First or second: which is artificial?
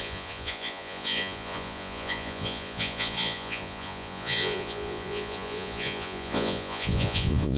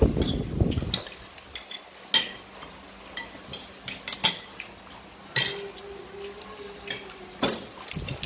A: first